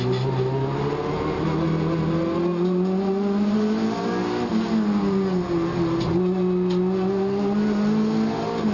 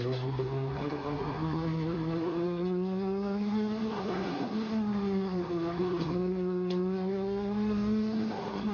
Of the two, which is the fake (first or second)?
second